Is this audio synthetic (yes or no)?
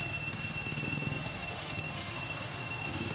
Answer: yes